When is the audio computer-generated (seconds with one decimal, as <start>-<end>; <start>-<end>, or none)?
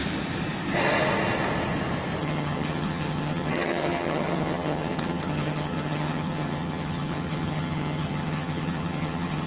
2.2-9.5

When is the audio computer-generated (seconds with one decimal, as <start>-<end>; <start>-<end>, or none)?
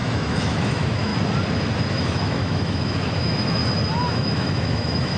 0.0-1.1; 1.9-3.6; 4.1-5.2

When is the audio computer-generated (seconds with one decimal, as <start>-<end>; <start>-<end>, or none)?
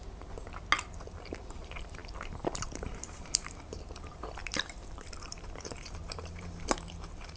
0.9-7.4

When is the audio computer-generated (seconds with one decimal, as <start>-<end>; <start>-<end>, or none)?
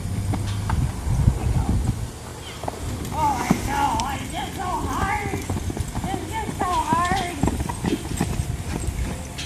2.3-3.0; 3.4-7.7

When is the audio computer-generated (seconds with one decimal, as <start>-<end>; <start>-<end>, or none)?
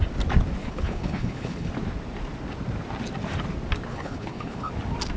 0.6-1.7; 3.9-4.7